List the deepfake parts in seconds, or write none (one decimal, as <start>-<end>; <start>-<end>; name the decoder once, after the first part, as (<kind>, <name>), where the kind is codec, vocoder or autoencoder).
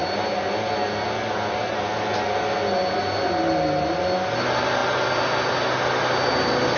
none